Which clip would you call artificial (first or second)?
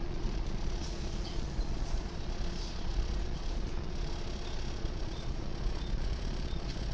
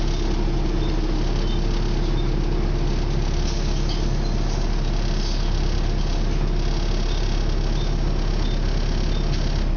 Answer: first